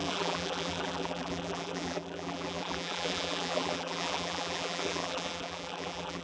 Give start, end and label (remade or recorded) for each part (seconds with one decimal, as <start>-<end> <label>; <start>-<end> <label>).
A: 0.0-6.2 remade